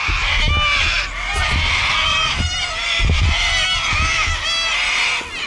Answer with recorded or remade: recorded